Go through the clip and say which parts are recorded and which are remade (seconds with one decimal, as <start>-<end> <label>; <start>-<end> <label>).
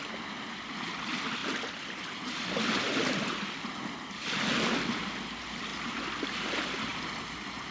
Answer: 0.0-6.9 recorded; 6.9-7.7 remade